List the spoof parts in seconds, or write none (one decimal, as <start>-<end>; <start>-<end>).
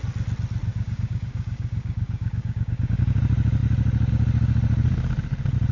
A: 0.7-3.2